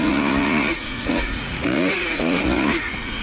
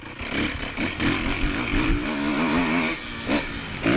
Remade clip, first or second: first